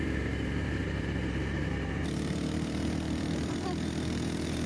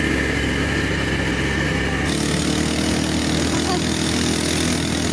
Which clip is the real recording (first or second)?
second